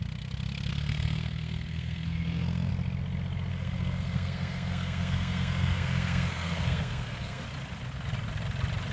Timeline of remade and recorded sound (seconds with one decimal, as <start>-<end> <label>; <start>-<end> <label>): 0.0-0.7 recorded; 0.7-2.7 remade; 2.7-3.5 recorded; 3.5-7.4 remade; 7.4-8.9 recorded